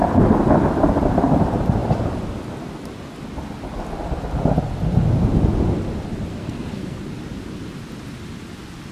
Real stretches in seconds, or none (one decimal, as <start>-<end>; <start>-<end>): 0.0-6.3; 7.0-8.9